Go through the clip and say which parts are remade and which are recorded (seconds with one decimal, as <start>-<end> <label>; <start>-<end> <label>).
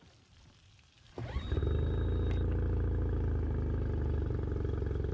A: 0.0-5.1 recorded